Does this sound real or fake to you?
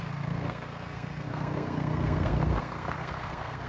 fake